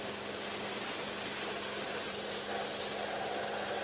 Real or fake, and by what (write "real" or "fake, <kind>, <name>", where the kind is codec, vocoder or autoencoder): real